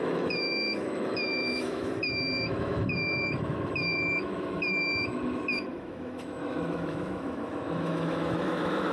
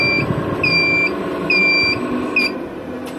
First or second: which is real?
second